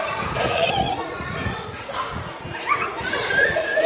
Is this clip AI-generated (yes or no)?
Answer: yes